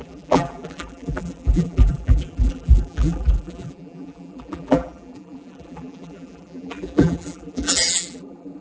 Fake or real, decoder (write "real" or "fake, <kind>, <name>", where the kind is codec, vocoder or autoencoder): fake, vocoder, BigVGAN v2